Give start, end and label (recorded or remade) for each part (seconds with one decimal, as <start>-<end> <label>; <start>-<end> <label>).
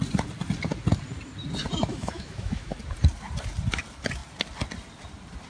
0.0-1.9 recorded; 1.9-2.8 remade; 2.8-5.5 recorded